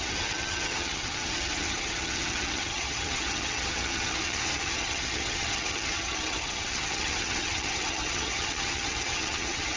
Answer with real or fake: fake